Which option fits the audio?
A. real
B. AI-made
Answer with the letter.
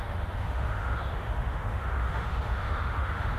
B